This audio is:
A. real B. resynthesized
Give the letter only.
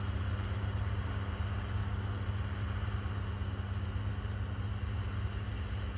A